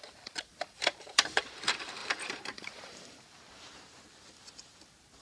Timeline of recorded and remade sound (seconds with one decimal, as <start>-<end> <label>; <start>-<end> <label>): 0.0-0.5 recorded; 0.5-1.6 remade; 1.6-2.0 recorded; 2.0-4.8 remade; 4.8-5.2 recorded